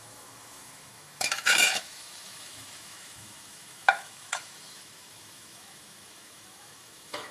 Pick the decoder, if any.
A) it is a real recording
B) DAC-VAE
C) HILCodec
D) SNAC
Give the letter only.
B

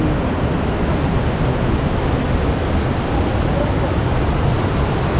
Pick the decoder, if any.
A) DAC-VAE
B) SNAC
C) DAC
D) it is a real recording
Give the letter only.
D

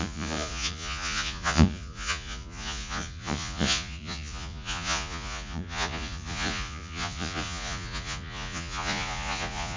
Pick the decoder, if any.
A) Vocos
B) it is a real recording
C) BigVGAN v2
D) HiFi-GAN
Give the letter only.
A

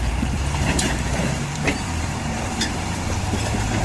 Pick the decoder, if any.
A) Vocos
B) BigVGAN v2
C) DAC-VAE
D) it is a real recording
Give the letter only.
B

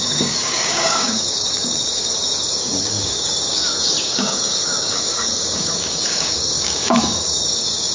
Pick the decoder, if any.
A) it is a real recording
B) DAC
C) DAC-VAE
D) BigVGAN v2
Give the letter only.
B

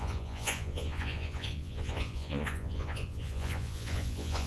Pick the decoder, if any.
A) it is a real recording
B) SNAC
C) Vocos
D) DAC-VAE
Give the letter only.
C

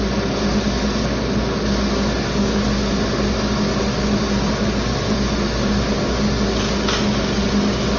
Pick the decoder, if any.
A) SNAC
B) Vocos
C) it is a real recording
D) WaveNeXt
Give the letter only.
C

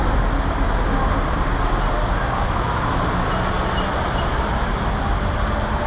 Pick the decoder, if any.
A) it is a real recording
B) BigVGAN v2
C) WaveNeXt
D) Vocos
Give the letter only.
A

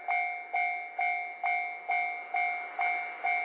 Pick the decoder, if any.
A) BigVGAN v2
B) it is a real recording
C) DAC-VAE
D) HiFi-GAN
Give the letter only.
B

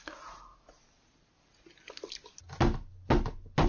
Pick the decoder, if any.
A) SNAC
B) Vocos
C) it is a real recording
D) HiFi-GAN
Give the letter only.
C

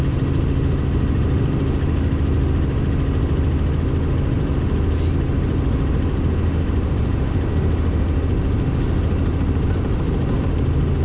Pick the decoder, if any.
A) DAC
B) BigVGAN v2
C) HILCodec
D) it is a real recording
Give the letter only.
D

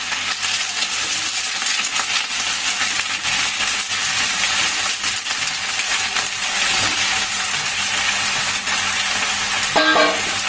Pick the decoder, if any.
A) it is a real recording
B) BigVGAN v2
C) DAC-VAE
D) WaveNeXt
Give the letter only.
A